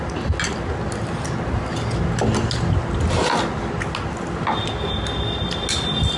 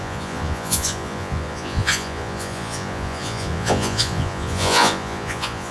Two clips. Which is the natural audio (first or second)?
first